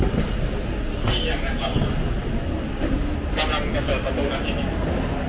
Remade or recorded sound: recorded